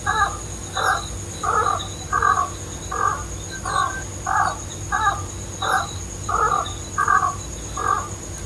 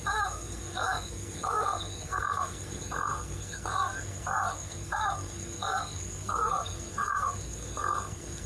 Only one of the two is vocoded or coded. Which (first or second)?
second